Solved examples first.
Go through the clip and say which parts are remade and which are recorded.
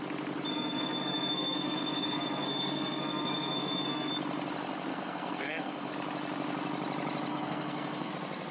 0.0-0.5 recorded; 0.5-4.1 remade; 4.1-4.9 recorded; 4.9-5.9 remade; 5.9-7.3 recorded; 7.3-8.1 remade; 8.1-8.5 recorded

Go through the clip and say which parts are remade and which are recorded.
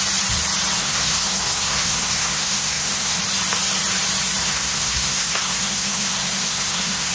0.0-0.8 recorded; 0.8-3.2 remade; 3.2-4.4 recorded; 4.4-7.1 remade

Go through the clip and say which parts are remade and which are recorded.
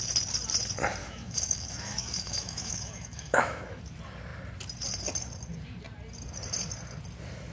0.0-1.0 recorded; 1.0-3.8 remade; 3.8-7.5 recorded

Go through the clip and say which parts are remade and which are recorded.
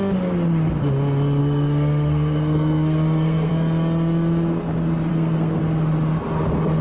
0.0-1.4 recorded; 1.4-3.5 remade; 3.5-5.1 recorded; 5.1-5.6 remade; 5.6-6.8 recorded